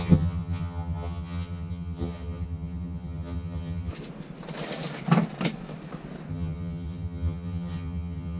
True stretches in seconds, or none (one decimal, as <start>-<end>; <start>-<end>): 3.9-6.3